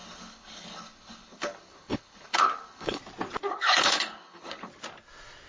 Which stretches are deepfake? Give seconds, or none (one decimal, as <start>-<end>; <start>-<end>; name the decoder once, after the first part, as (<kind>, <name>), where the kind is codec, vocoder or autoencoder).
0.0-3.0 (codec, HILCodec); 3.5-4.7